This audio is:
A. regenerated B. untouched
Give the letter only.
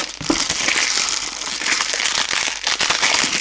B